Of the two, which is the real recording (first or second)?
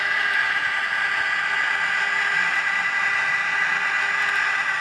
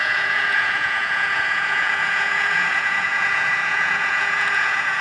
first